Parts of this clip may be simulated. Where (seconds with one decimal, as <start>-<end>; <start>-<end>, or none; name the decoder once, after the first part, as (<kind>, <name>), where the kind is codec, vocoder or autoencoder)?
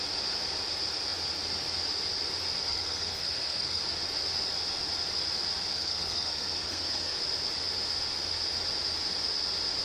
2.7-3.8 (codec, SNAC); 5.7-7.2